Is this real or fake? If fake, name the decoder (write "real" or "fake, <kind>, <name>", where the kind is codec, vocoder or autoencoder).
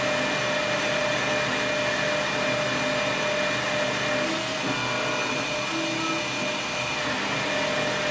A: real